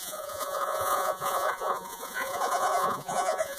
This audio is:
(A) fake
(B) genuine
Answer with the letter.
A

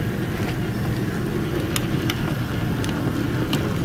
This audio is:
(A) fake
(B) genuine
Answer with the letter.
B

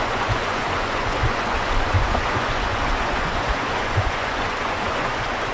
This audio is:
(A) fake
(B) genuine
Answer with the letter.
A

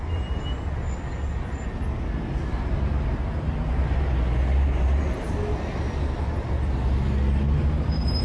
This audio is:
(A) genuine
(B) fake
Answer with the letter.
A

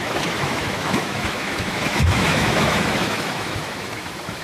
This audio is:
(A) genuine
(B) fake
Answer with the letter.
B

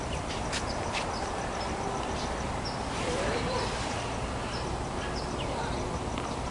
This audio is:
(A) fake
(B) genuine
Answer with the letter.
A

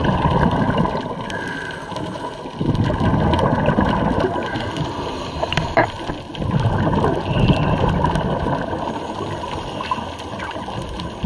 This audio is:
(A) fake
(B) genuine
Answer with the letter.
B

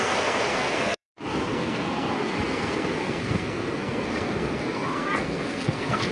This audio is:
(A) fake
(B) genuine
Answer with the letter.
A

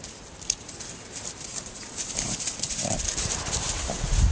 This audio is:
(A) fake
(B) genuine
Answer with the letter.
A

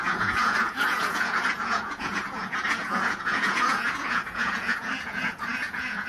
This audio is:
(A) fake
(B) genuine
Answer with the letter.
A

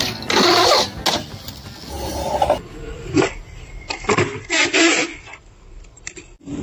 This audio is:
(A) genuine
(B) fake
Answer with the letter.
A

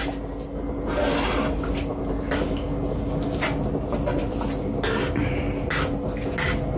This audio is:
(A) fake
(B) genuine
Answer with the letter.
B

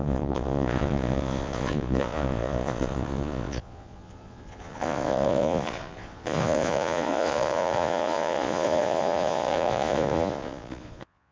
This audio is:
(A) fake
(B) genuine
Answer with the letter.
A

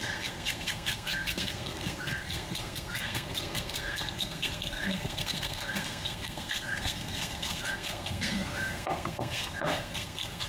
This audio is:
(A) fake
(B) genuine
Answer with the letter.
A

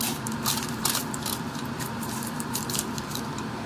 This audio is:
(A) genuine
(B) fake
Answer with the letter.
B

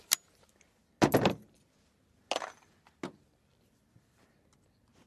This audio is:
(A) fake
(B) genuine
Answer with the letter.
B